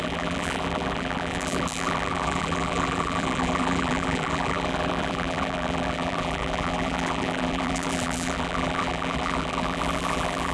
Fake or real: fake